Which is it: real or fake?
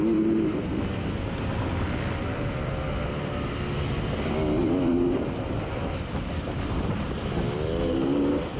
real